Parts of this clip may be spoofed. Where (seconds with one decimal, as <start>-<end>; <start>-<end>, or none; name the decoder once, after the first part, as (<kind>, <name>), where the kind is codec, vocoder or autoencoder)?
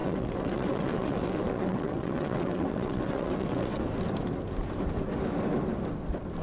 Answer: 0.0-3.8 (vocoder, WaveNeXt)